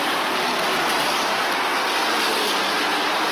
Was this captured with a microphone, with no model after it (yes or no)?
yes